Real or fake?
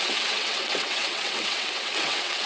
fake